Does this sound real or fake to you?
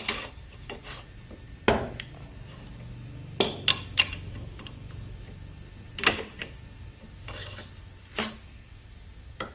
real